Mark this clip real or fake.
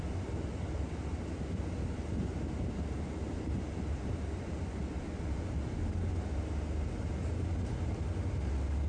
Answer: real